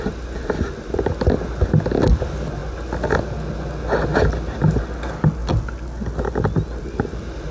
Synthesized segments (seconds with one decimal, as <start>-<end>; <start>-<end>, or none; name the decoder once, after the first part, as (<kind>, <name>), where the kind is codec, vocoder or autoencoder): none